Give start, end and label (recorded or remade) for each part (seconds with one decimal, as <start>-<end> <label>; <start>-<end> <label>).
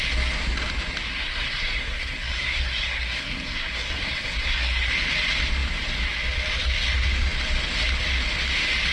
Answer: 0.0-1.1 recorded; 1.1-4.9 remade; 4.9-8.9 recorded